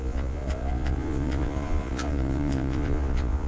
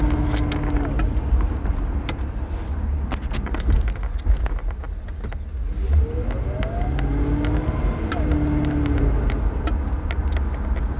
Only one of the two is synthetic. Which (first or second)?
first